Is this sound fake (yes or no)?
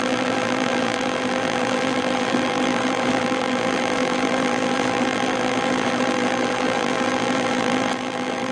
yes